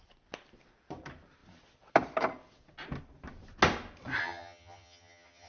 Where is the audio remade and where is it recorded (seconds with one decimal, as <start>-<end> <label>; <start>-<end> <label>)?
0.0-4.2 recorded; 4.2-5.5 remade